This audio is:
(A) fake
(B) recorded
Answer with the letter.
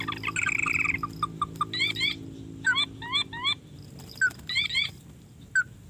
B